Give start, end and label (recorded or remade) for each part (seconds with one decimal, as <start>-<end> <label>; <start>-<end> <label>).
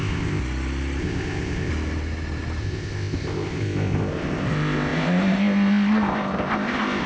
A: 0.0-0.4 remade; 0.4-1.0 recorded; 1.0-1.7 remade; 1.7-2.6 recorded; 2.6-7.1 remade